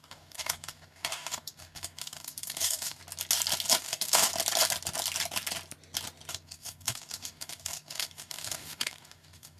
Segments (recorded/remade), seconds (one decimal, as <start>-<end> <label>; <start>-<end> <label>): 0.0-3.0 remade; 3.0-3.8 recorded; 3.8-4.3 remade; 4.3-6.3 recorded; 6.3-9.6 remade